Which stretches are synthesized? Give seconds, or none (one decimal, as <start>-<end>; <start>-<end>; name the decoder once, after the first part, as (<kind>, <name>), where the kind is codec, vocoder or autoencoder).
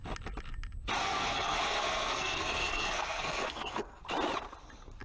1.0-4.0 (codec, SNAC)